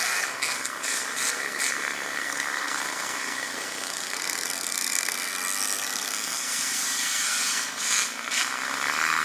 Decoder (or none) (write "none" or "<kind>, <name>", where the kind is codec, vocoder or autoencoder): codec, SNAC